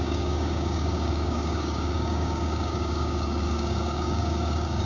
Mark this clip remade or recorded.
remade